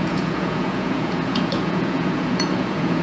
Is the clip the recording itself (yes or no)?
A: no